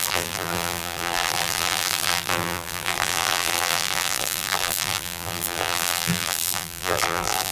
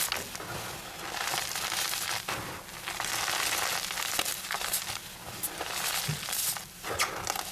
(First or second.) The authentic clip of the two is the second